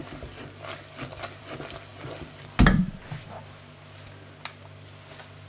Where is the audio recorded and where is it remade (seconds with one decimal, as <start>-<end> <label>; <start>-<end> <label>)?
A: 0.0-5.5 recorded